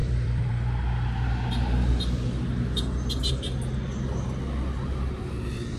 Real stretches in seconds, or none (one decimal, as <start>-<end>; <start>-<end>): 0.5-5.8